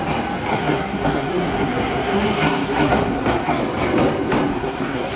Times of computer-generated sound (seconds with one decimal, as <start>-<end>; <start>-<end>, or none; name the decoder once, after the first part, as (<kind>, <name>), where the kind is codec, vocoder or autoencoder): 0.5-3.6 (codec, SNAC); 4.5-5.2